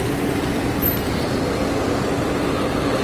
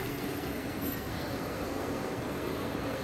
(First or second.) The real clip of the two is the first